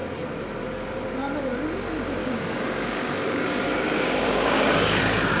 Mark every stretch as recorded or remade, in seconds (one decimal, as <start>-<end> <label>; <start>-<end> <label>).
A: 0.0-2.2 recorded; 2.2-5.0 remade; 5.0-5.4 recorded